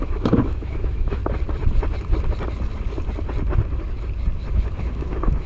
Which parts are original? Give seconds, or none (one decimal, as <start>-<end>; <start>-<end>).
1.2-4.5